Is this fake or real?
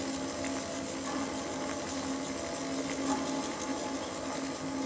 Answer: real